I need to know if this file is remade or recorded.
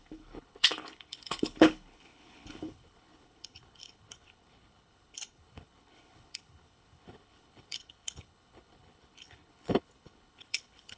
remade